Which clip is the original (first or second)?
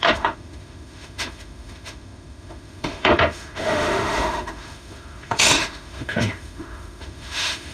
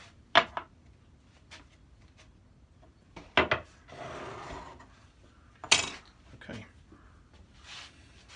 second